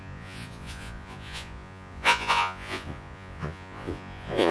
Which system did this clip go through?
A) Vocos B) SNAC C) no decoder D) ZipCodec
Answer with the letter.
A